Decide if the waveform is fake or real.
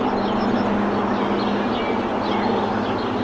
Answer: real